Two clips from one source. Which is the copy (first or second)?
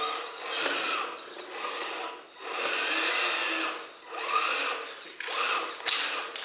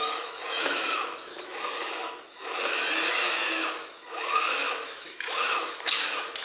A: second